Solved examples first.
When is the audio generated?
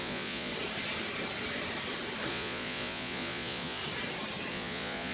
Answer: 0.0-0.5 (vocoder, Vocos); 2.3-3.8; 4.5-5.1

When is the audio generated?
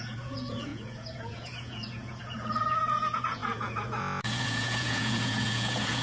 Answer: 0.0-6.0 (vocoder, Vocos)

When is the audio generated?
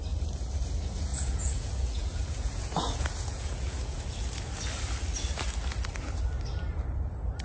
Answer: 1.1-4.0 (vocoder, Vocos)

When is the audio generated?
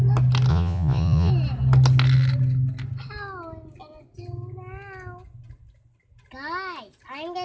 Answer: 0.5-1.3 (vocoder, Vocos)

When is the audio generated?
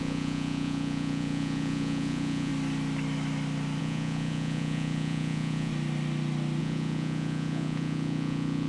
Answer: 0.0-2.5 (vocoder, Vocos); 3.8-5.7; 6.6-8.7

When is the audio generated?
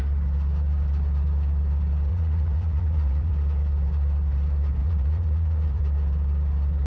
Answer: 2.1-3.3 (vocoder, Vocos); 4.8-5.8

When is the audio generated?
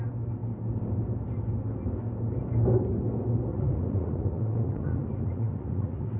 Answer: 3.5-6.2 (vocoder, Vocos)